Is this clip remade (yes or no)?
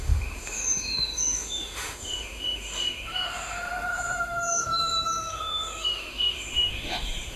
yes